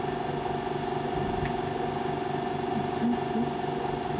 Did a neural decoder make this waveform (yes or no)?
no